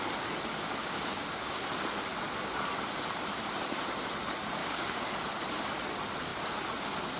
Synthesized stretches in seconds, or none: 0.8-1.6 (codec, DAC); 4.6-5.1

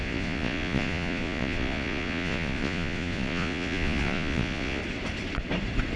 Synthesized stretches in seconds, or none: 0.0-4.8 (vocoder, Vocos)

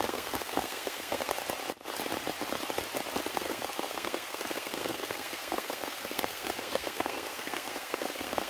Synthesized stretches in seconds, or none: 0.0-1.4 (codec, SNAC); 3.3-8.5